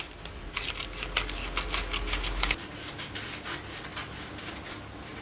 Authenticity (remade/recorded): recorded